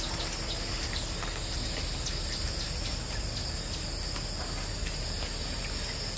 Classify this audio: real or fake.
real